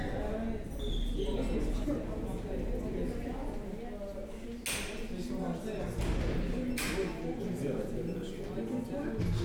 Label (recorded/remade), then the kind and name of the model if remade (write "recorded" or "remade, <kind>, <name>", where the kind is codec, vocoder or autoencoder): recorded